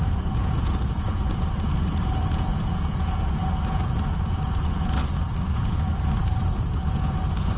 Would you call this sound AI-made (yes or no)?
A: yes